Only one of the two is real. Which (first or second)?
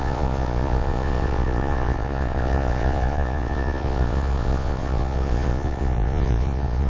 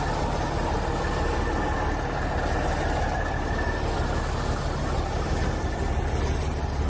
second